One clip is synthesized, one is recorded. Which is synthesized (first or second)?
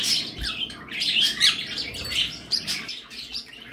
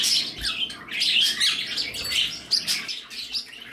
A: first